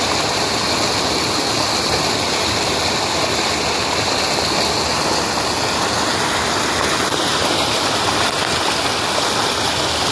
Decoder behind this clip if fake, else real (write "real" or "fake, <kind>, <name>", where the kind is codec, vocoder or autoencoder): real